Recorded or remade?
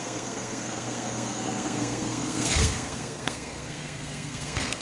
remade